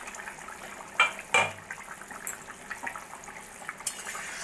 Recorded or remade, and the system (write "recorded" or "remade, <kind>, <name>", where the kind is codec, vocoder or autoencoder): recorded